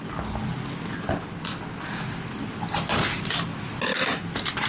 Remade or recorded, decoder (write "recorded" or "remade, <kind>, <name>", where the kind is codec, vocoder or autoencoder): recorded